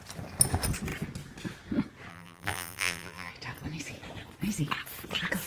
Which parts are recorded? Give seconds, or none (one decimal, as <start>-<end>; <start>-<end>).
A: 0.0-2.1; 3.3-5.5